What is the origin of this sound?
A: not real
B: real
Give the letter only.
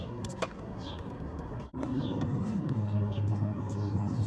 A